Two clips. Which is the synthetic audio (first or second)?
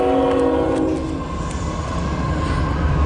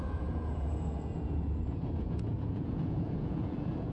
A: second